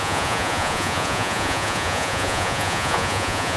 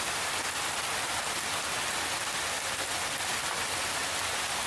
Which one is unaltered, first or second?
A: second